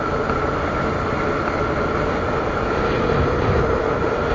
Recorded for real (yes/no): yes